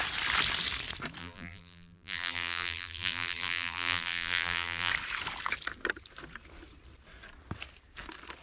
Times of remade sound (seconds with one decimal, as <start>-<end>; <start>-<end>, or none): 1.2-4.9